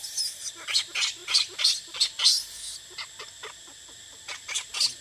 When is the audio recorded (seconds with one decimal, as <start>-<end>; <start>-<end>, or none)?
0.0-5.0